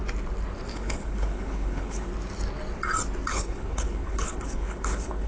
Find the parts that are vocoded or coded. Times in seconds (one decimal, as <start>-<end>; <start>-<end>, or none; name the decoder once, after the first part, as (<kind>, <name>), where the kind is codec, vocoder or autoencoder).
0.7-2.1 (codec, HILCodec); 3.3-5.3